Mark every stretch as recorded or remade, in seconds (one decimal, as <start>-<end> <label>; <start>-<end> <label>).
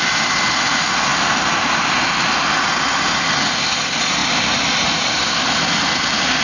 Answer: 0.0-4.2 recorded; 4.2-5.9 remade; 5.9-6.4 recorded